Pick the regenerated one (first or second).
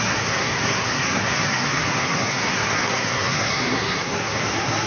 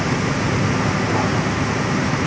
first